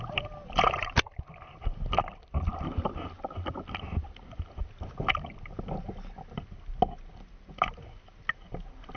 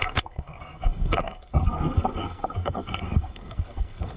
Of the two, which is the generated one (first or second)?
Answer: second